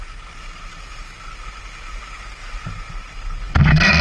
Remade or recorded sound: recorded